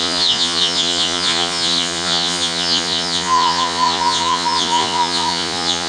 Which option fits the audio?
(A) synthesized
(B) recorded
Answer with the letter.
A